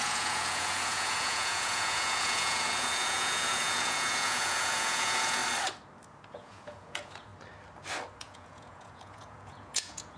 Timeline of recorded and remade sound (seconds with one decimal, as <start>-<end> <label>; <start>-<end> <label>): 0.0-5.4 remade; 5.4-6.3 recorded; 6.3-7.3 remade; 7.3-8.2 recorded; 8.2-10.2 remade